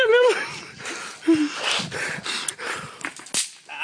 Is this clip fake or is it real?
real